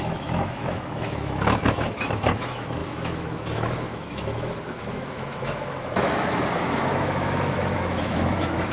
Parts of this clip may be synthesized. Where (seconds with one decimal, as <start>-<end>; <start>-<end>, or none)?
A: 0.0-8.7